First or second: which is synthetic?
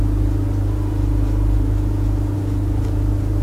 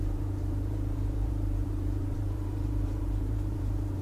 second